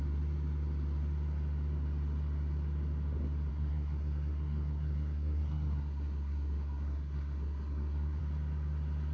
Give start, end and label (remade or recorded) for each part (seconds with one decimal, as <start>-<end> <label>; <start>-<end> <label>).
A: 0.0-3.5 recorded; 3.5-8.2 remade; 8.2-9.1 recorded